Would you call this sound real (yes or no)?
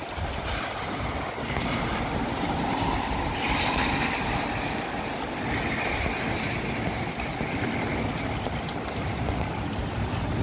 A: yes